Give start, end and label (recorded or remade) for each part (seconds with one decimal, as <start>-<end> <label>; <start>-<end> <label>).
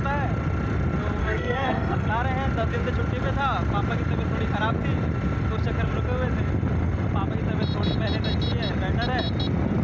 0.0-1.2 recorded; 1.2-2.1 remade; 2.1-9.8 recorded